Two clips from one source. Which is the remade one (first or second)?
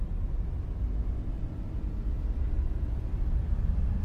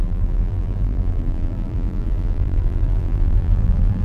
second